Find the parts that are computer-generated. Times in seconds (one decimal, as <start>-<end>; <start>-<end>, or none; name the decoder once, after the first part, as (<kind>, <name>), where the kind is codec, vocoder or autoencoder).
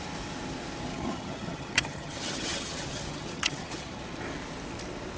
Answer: 0.9-4.0 (vocoder, HiFi-GAN)